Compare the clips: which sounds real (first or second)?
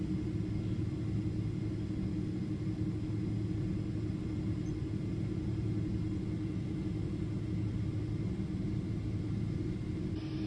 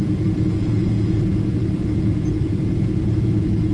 first